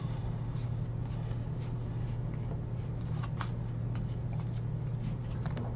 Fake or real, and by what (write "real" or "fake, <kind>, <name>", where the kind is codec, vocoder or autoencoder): real